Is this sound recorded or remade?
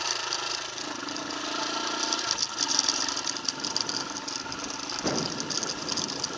recorded